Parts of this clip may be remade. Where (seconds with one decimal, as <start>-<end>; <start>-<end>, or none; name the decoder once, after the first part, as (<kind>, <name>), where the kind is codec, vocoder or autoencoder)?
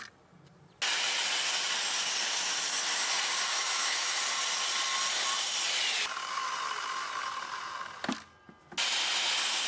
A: 3.5-4.2 (autoencoder, DAC-VAE)